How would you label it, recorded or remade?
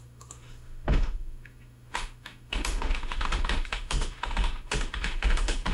remade